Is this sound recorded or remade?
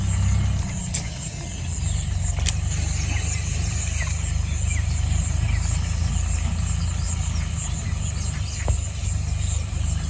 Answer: recorded